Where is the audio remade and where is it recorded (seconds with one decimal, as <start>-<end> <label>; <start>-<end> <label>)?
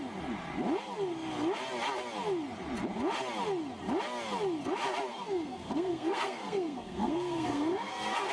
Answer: 0.0-5.1 recorded; 5.1-8.3 remade